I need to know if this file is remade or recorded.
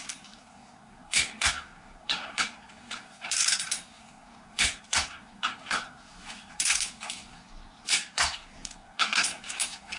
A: remade